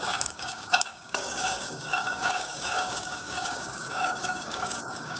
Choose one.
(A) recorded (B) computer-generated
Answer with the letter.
B